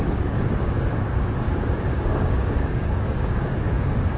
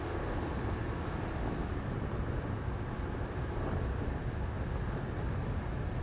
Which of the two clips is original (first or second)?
second